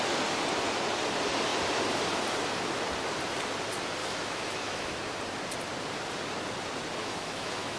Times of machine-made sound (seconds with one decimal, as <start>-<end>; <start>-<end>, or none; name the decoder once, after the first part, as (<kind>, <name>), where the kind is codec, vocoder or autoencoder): 4.0-4.9 (autoencoder, DAC-VAE); 7.0-7.8